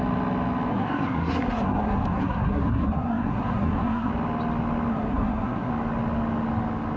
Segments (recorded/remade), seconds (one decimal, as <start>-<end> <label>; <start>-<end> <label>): 0.0-0.7 recorded; 0.7-4.1 remade; 4.1-4.9 recorded; 4.9-5.7 remade; 5.7-7.0 recorded